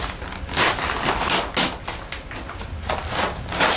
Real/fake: real